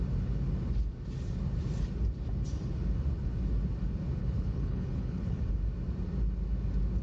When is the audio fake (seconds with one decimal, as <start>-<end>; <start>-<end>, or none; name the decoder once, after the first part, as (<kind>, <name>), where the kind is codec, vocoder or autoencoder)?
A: 4.2-5.4 (codec, HILCodec)